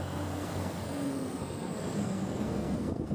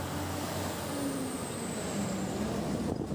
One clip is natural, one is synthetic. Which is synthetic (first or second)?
first